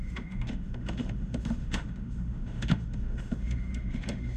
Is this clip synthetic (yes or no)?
yes